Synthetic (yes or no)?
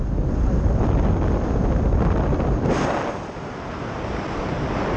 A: no